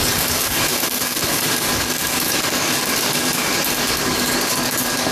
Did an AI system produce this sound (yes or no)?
yes